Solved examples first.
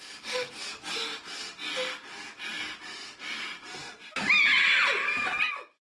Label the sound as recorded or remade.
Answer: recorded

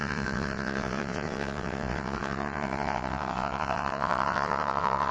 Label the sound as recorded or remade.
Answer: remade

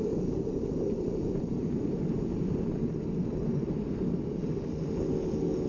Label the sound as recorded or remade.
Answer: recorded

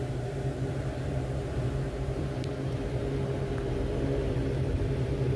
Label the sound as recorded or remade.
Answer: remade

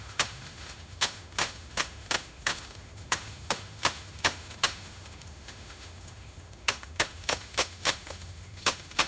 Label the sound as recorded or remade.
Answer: remade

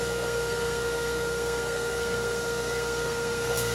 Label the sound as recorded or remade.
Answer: remade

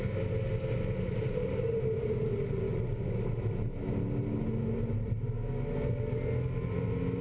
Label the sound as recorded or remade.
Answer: recorded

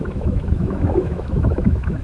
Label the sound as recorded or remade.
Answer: remade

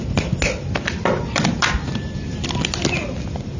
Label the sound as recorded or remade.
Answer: recorded